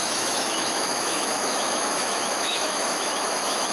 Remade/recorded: remade